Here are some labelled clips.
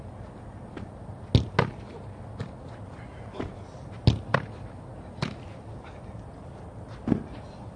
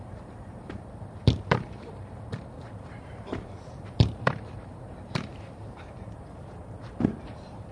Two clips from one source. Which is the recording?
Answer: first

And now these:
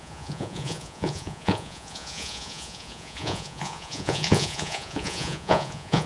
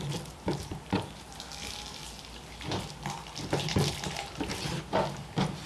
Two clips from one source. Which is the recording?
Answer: second